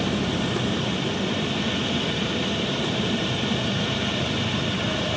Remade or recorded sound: remade